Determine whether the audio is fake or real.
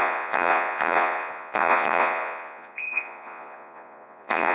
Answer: fake